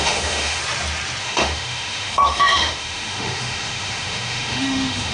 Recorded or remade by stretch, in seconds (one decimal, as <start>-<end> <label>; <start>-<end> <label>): 0.0-0.6 remade; 0.6-1.2 recorded; 1.2-5.1 remade